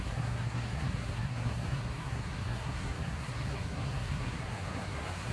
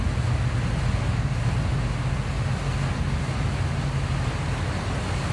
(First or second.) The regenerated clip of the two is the first